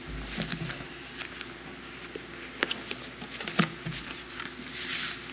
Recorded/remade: recorded